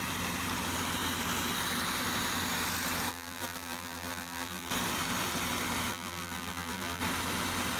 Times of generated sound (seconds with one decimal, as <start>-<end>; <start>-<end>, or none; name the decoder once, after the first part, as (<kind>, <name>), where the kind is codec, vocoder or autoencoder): 3.1-4.7 (vocoder, BigVGAN v2); 5.9-7.0